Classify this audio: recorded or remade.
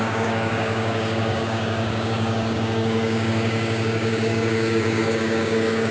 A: remade